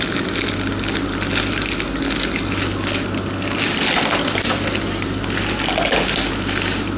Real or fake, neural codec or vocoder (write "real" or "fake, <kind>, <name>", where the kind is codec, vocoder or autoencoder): real